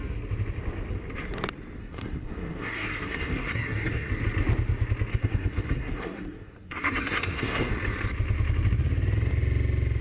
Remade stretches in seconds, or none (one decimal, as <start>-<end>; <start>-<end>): 1.8-4.1; 5.1-7.7